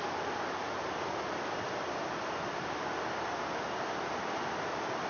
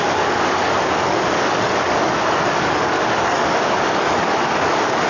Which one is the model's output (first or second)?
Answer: second